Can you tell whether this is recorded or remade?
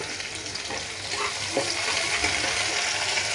remade